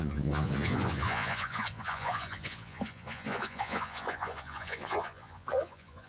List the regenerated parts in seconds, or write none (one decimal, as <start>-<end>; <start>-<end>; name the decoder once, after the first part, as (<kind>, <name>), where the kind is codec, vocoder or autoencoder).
0.0-6.1 (vocoder, Vocos)